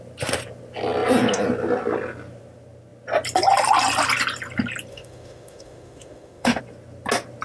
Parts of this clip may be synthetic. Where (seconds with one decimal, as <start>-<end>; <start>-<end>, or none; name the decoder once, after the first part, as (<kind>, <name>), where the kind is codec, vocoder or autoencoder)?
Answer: 4.9-6.6 (autoencoder, DAC-VAE)

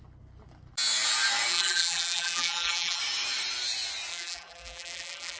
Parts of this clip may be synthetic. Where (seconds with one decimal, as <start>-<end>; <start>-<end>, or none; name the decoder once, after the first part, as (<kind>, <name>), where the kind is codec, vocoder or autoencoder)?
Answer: 1.5-3.0 (vocoder, BigVGAN v2); 4.1-5.4